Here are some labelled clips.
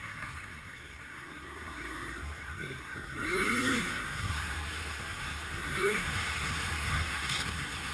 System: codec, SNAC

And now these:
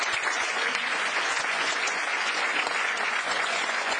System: vocoder, Vocos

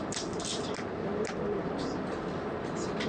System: none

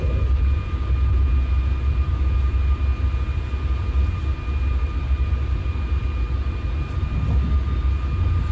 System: none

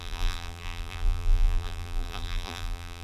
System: vocoder, BigVGAN v2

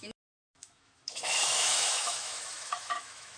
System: autoencoder, DAC-VAE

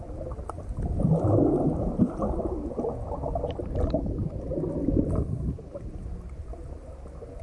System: none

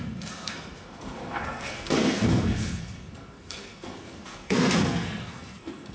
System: codec, SNAC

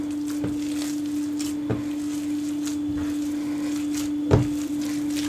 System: none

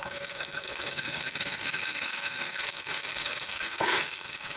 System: codec, SNAC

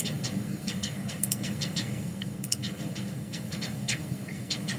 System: codec, SNAC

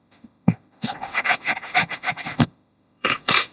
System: autoencoder, DAC-VAE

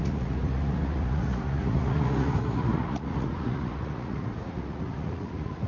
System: vocoder, Vocos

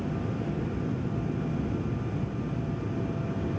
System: none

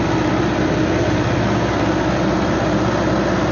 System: none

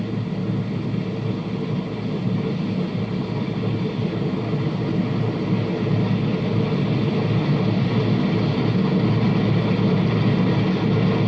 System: none